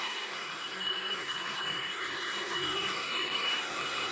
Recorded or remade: remade